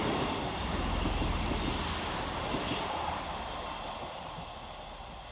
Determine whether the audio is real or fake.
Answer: real